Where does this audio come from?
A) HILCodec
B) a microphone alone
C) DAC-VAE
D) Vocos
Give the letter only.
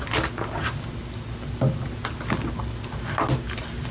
B